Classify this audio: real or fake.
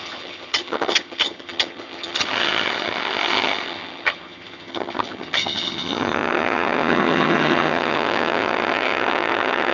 fake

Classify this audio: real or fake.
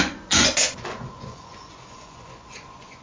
fake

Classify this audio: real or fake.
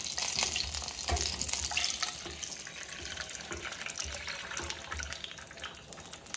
real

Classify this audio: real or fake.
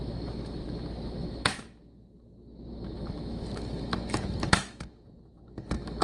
fake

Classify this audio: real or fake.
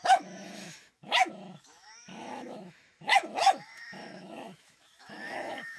fake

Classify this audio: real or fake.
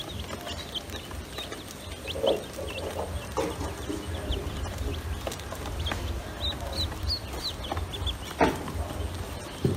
real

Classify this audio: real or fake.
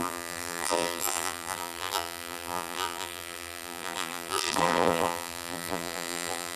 fake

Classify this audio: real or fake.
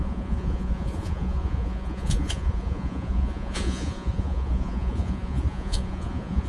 fake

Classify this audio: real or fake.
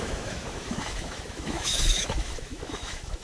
fake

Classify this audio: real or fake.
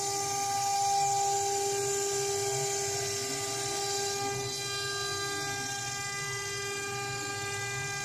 real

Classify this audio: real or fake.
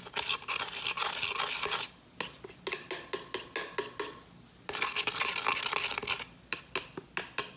real